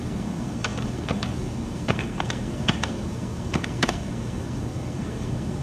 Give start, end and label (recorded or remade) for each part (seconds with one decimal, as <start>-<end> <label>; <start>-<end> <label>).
0.0-5.6 remade